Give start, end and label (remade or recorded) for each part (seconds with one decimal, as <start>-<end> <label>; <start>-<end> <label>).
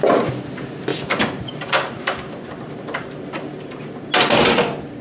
0.0-0.9 recorded; 0.9-3.9 remade; 3.9-5.0 recorded